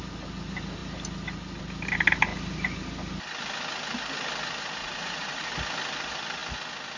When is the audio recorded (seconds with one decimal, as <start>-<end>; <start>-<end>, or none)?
0.0-4.8; 5.5-7.0

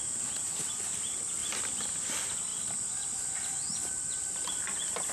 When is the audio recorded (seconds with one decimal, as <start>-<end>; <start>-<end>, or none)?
0.0-5.1